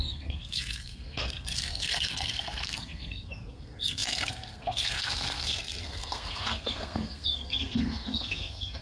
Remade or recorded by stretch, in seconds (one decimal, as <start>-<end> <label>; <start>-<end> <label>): 0.0-8.8 remade